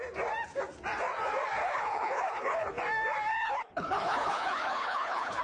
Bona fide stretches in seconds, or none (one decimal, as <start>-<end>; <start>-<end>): 0.0-1.6; 2.8-3.3